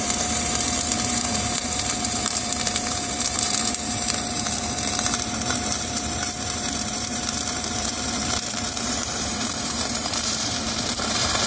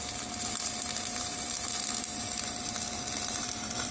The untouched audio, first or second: second